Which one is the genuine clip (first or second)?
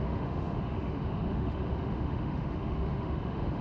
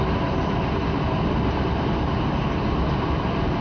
second